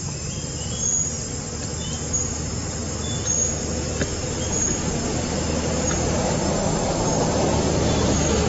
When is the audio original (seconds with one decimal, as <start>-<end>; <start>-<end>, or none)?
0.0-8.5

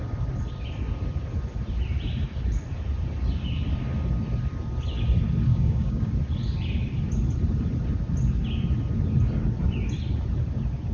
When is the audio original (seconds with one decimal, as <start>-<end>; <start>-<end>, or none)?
0.0-5.5; 6.1-10.9

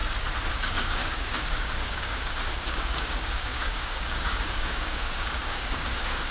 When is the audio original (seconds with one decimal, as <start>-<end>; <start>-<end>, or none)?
0.0-0.5

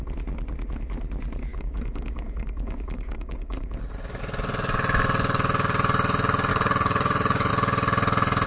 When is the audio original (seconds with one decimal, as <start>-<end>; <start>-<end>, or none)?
0.0-1.5; 4.2-6.5; 7.5-8.5

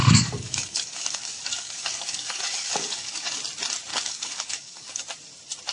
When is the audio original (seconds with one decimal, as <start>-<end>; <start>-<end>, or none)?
3.4-3.9; 5.0-5.7